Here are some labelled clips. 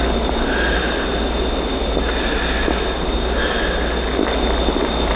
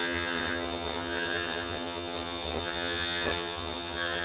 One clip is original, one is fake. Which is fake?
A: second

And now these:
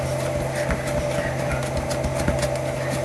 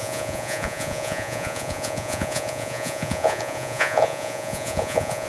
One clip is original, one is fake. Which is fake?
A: second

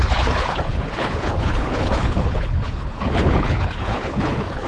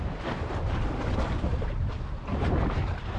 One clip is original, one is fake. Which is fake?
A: first